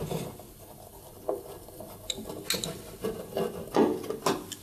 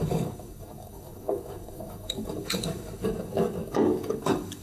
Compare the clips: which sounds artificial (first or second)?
second